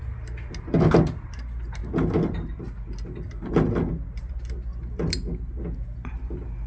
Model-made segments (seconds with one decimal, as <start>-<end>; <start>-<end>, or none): none